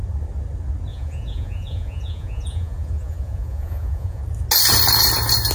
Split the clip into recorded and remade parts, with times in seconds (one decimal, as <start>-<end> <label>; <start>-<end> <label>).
0.0-0.9 recorded; 0.9-4.2 remade; 4.2-5.5 recorded